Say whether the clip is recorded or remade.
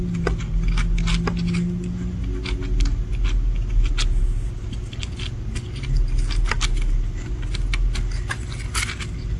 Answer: recorded